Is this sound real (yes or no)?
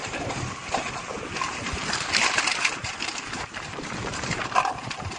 no